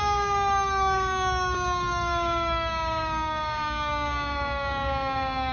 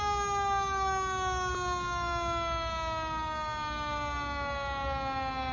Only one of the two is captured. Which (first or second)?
second